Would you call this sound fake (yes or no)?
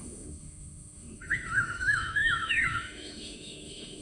yes